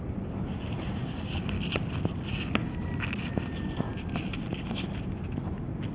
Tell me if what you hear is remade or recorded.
recorded